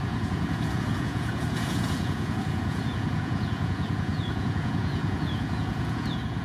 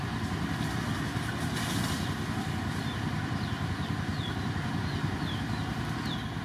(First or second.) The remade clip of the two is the first